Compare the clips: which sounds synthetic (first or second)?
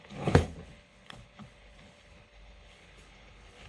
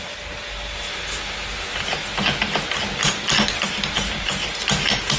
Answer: first